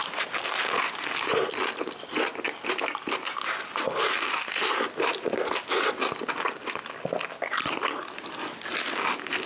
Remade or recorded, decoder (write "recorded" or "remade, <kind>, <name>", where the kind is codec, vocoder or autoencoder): recorded